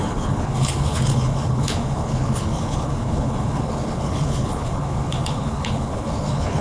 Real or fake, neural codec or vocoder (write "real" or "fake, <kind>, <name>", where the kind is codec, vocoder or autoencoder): fake, codec, HILCodec